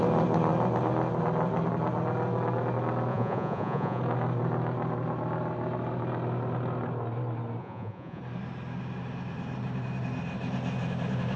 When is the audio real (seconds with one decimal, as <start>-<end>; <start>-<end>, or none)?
0.0-3.1; 4.0-7.6; 8.2-11.4